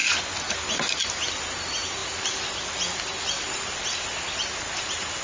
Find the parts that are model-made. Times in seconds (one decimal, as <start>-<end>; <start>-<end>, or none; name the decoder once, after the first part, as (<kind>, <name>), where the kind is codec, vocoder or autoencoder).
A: none